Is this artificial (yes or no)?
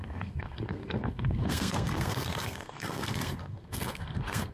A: yes